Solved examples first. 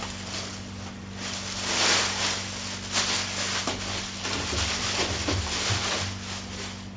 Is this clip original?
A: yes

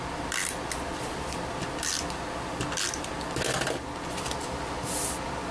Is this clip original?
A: yes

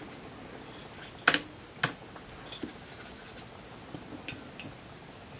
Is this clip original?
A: yes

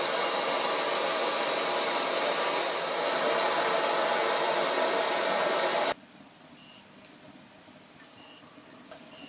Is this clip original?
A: yes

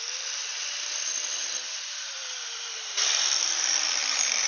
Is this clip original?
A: no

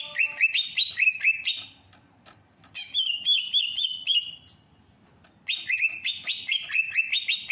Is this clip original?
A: yes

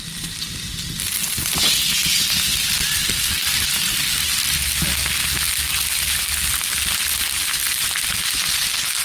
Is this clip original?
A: yes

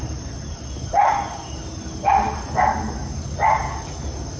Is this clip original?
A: yes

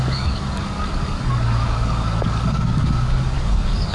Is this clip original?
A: no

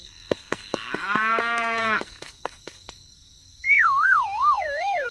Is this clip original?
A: no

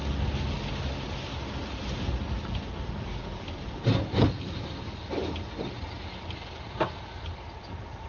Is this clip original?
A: yes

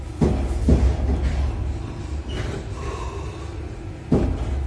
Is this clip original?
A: yes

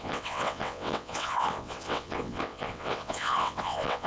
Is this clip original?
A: no